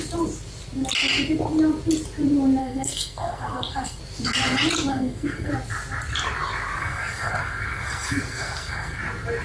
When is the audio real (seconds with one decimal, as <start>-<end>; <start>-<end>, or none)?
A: 0.0-2.6; 4.0-4.9; 5.5-6.8; 9.0-9.4